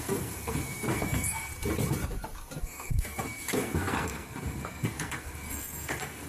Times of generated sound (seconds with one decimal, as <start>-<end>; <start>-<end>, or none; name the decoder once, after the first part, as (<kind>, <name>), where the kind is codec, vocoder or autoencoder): 0.0-1.5 (codec, SNAC); 2.6-6.3